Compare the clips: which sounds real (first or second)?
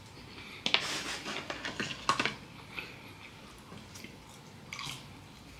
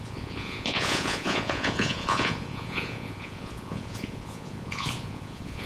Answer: first